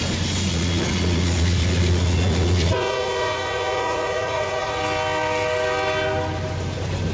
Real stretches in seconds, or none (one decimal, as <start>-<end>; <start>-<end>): 0.0-0.5; 4.8-7.1